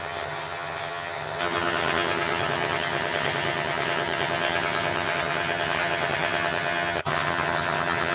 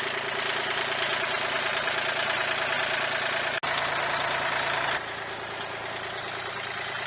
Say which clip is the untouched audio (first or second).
second